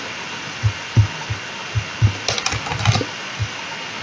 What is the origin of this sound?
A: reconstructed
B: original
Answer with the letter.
B